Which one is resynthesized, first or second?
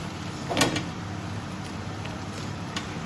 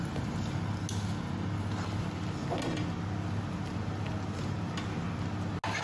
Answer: first